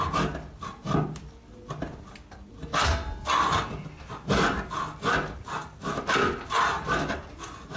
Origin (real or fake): real